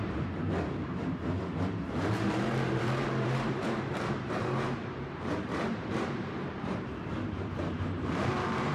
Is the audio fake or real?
fake